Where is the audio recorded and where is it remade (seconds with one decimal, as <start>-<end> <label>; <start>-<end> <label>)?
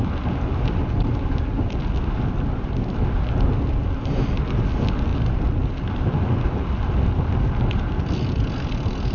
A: 0.0-5.1 recorded; 5.1-5.9 remade; 5.9-9.1 recorded